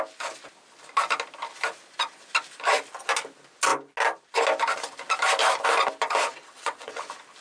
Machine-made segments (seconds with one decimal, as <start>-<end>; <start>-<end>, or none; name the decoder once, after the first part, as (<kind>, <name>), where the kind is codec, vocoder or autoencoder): 6.3-7.0 (vocoder, WaveNeXt)